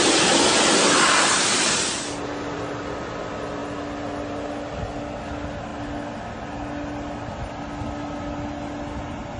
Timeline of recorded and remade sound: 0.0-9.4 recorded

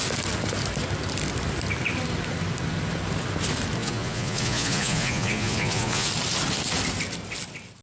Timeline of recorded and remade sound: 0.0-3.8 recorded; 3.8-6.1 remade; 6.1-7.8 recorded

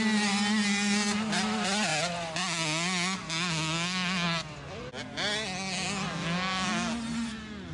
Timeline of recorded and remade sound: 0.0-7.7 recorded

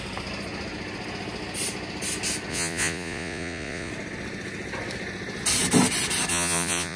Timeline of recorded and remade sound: 0.0-2.5 recorded; 2.5-3.9 remade; 3.9-6.3 recorded; 6.3-7.0 remade